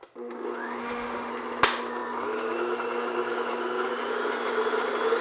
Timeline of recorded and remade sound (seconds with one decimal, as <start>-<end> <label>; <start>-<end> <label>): 0.0-0.8 recorded; 0.8-1.3 remade; 1.3-5.2 recorded